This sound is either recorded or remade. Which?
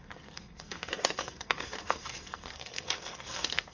remade